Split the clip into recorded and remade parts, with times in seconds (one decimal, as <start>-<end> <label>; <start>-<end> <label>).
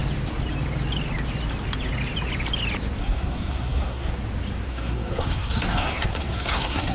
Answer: 0.0-3.0 recorded; 3.0-4.1 remade; 4.1-4.7 recorded; 4.7-6.9 remade